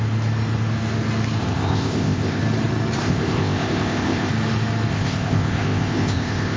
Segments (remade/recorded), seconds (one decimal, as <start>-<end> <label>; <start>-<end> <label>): 0.0-1.4 recorded; 1.4-2.4 remade; 2.4-3.0 recorded; 3.0-4.3 remade; 4.3-4.9 recorded; 4.9-6.6 remade

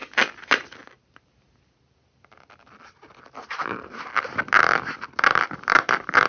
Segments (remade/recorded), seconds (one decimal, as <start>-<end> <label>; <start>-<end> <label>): 0.0-6.3 recorded

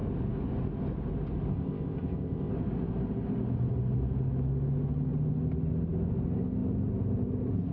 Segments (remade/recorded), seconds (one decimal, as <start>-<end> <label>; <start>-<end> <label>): 0.0-1.5 recorded; 1.5-2.5 remade; 2.5-7.7 recorded

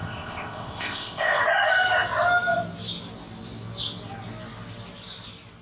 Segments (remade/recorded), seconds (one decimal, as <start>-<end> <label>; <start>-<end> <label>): 0.0-1.4 remade; 1.4-5.6 recorded

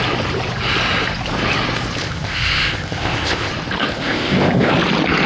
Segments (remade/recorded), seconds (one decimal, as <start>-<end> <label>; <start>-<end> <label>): 0.0-2.0 recorded; 2.0-3.5 remade; 3.5-3.9 recorded; 3.9-4.7 remade; 4.7-5.3 recorded

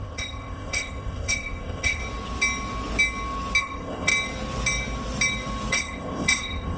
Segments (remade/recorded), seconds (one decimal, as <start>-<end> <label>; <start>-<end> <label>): 0.0-2.0 remade; 2.0-3.6 recorded; 3.6-4.1 remade; 4.1-5.7 recorded; 5.7-6.8 remade